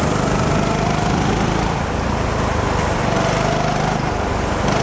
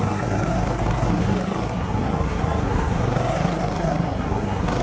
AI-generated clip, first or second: second